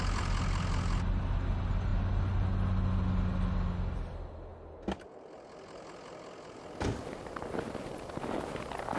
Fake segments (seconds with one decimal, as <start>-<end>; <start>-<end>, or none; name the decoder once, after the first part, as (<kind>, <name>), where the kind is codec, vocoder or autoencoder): none